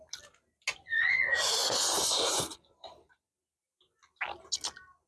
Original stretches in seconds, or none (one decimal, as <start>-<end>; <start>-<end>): 0.0-1.6; 2.4-5.1